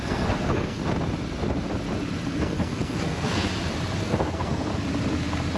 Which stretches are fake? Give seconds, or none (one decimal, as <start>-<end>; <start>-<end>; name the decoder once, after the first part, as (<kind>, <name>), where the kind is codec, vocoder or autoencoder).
0.0-0.8 (codec, SNAC); 2.4-3.5; 4.0-4.7